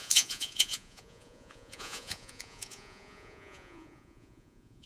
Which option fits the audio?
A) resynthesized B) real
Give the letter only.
A